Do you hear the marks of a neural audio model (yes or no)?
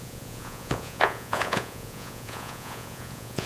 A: yes